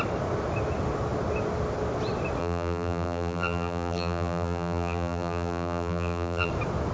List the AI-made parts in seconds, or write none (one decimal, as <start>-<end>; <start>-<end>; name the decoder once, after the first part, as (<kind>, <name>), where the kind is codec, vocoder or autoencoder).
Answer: 2.4-6.5 (vocoder, BigVGAN v2)